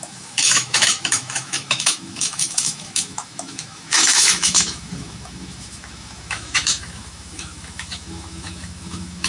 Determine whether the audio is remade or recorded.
remade